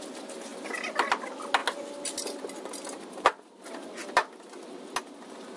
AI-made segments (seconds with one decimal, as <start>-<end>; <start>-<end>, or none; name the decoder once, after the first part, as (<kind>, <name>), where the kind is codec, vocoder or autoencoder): none